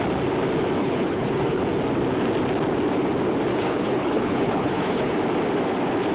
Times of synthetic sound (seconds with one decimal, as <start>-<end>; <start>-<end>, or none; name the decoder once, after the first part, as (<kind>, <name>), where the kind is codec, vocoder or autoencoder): 0.8-1.6 (codec, HILCodec); 3.5-5.2